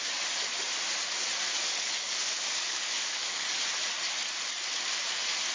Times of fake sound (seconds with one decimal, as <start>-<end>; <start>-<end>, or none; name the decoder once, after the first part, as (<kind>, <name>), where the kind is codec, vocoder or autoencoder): 1.5-3.6 (codec, DAC)